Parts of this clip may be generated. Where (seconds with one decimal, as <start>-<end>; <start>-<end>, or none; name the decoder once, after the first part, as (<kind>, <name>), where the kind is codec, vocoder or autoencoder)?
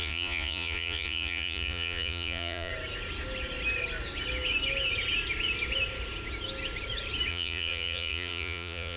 0.0-2.7 (vocoder, Vocos); 7.3-9.0